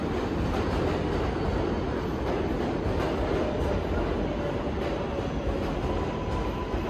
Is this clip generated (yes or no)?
no